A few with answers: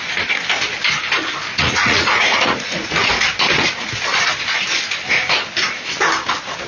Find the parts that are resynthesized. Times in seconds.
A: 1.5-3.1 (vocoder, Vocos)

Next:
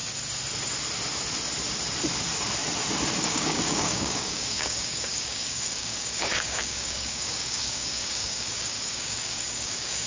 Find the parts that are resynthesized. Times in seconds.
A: 3.2-10.1 (codec, DAC)